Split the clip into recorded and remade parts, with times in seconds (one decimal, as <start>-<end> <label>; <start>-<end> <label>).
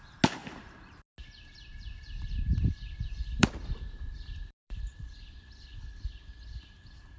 0.0-1.7 recorded; 1.7-6.0 remade; 6.0-7.2 recorded